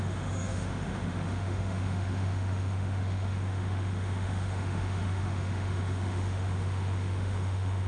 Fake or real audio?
fake